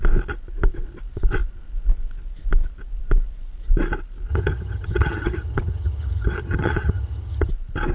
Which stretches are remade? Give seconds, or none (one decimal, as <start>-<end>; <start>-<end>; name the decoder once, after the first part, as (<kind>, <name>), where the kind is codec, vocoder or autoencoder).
4.3-7.5 (vocoder, HiFi-GAN)